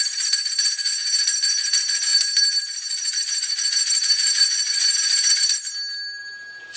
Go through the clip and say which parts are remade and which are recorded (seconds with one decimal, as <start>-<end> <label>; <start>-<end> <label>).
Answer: 0.0-6.8 recorded